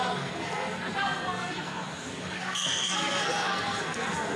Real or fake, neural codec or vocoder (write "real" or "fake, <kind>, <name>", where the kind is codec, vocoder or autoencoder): fake, codec, SNAC